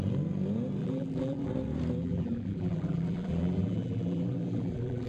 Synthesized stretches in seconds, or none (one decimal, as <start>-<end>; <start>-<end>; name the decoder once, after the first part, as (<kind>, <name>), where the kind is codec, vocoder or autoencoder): 0.8-1.5 (vocoder, BigVGAN v2); 2.0-5.1